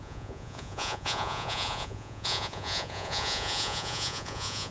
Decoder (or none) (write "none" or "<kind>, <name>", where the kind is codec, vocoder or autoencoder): vocoder, Vocos